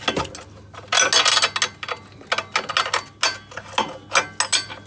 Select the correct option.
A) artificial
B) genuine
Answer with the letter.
B